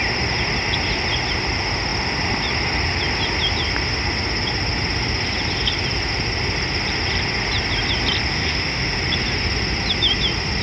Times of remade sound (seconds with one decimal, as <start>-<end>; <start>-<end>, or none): 8.3-9.0